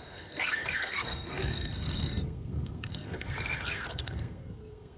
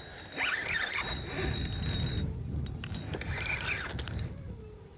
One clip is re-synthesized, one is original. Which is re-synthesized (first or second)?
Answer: first